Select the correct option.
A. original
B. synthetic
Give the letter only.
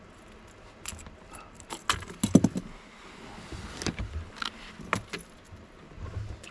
A